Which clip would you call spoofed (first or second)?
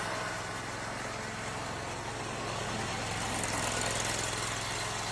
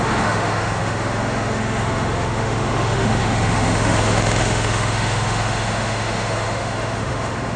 second